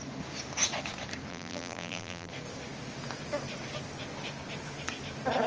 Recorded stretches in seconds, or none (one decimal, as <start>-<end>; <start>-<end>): 0.0-1.3; 2.3-5.5